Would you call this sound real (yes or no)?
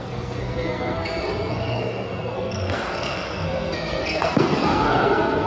no